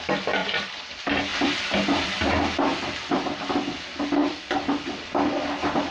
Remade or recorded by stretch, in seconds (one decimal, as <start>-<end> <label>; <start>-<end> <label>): 0.0-0.4 recorded; 0.4-0.9 remade; 0.9-1.3 recorded; 1.3-2.3 remade; 2.3-2.7 recorded; 2.7-3.6 remade; 3.6-4.2 recorded; 4.2-4.7 remade; 4.7-5.9 recorded